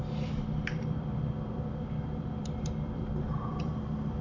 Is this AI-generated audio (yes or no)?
yes